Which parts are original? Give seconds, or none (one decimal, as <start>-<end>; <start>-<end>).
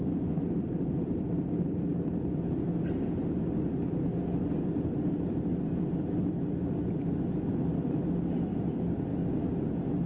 1.9-2.8; 9.1-9.7